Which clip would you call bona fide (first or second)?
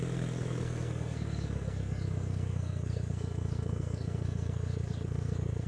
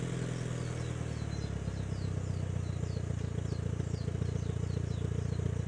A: second